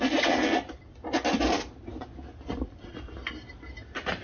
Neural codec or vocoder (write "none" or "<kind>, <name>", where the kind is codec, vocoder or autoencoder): none